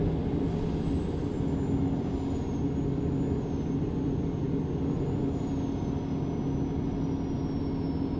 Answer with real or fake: real